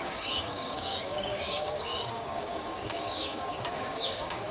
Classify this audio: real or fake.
fake